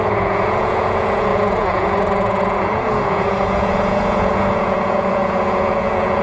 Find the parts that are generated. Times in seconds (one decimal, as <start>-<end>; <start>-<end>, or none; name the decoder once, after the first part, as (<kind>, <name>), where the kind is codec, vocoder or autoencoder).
0.0-6.2 (vocoder, Vocos)